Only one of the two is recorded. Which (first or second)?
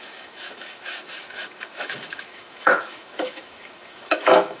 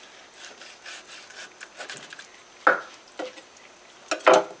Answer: second